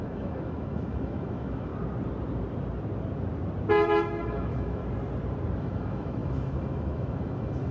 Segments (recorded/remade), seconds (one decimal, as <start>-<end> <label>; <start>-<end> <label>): 0.0-1.7 remade; 1.7-4.2 recorded; 4.2-4.8 remade; 4.8-5.6 recorded; 5.6-7.7 remade